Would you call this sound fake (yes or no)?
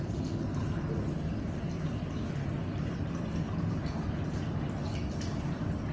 no